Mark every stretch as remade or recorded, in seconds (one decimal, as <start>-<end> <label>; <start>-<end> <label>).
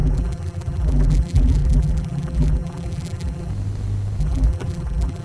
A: 0.0-3.5 remade; 3.5-4.2 recorded; 4.2-5.2 remade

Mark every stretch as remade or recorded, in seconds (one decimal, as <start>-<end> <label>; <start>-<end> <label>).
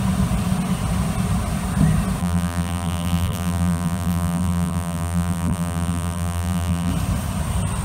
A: 0.0-2.2 recorded; 2.2-6.9 remade; 6.9-7.8 recorded